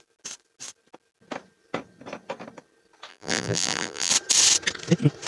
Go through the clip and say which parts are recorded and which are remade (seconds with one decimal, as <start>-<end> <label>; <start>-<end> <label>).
0.0-3.1 recorded; 3.1-4.1 remade; 4.1-5.3 recorded

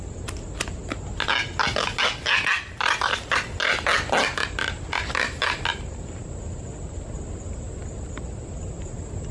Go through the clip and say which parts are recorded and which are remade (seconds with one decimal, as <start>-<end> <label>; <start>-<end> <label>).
0.0-9.3 recorded

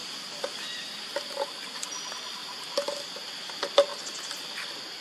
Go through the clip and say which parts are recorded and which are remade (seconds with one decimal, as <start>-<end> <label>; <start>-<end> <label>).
0.0-0.9 remade; 0.9-2.4 recorded; 2.4-3.4 remade; 3.4-3.9 recorded; 3.9-5.0 remade